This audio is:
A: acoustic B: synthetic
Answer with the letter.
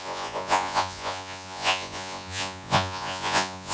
B